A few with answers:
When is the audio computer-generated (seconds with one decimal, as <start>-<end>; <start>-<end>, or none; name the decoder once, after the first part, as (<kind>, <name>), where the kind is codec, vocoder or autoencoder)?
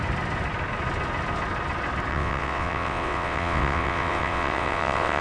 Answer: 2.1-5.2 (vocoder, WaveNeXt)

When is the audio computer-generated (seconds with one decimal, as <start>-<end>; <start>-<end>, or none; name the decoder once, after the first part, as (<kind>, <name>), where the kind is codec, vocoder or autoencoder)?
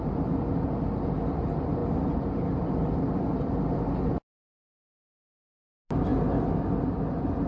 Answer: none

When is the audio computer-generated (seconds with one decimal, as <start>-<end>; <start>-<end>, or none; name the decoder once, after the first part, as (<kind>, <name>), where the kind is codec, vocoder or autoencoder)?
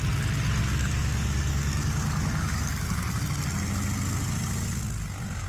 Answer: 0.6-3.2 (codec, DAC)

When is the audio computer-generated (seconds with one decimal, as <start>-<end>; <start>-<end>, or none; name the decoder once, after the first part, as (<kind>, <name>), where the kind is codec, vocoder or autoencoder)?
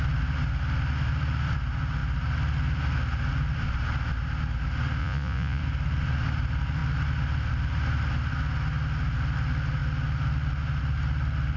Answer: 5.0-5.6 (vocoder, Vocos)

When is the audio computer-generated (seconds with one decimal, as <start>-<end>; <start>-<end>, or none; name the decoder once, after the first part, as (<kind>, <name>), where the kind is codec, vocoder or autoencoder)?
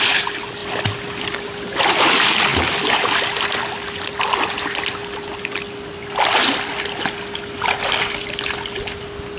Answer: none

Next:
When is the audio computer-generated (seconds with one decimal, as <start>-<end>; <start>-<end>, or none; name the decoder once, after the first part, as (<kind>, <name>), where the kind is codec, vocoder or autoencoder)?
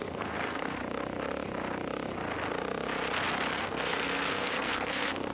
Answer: 0.0-0.8 (codec, SNAC); 3.5-5.3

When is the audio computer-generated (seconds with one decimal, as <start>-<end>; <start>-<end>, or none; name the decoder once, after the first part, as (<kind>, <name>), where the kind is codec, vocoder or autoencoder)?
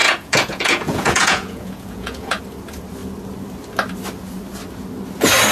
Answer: 0.0-2.4 (vocoder, Vocos)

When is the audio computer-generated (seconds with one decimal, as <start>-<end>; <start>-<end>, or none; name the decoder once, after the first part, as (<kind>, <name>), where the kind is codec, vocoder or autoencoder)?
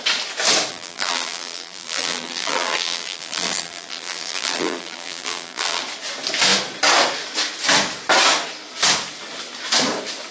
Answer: 0.7-5.8 (vocoder, BigVGAN v2)